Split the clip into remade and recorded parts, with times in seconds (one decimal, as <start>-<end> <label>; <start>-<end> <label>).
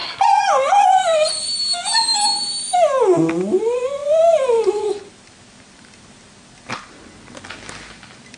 0.0-1.3 remade; 1.3-4.0 recorded; 4.0-6.7 remade; 6.7-8.4 recorded